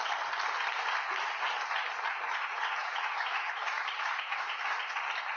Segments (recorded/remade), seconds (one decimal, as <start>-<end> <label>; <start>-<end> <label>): 0.0-2.8 recorded; 2.8-4.8 remade; 4.8-5.4 recorded